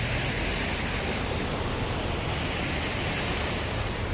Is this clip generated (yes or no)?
no